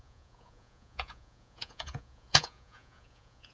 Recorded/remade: remade